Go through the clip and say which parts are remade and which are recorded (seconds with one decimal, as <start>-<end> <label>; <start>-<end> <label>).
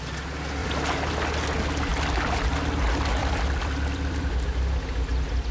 0.0-0.6 recorded; 0.6-1.1 remade; 1.1-3.2 recorded; 3.2-4.3 remade; 4.3-5.5 recorded